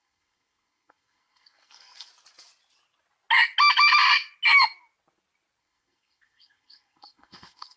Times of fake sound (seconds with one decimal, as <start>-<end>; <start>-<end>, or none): 0.0-2.1; 5.6-7.8